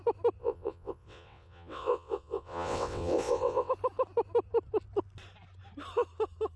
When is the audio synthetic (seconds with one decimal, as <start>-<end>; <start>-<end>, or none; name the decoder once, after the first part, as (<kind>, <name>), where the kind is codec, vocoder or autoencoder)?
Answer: 0.4-3.7 (vocoder, WaveNeXt)